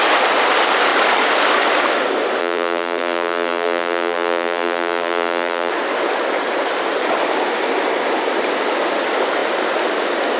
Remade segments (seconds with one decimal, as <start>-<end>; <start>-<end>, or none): 2.4-5.7